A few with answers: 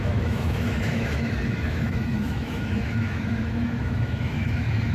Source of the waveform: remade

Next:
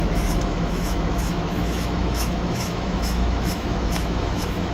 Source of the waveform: remade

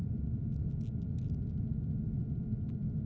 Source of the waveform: recorded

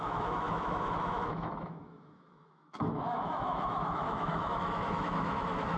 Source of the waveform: remade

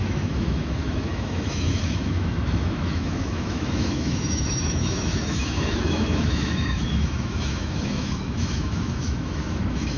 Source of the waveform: remade